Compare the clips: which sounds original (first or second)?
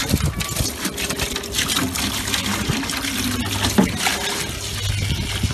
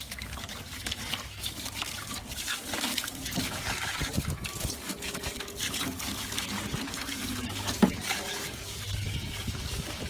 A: first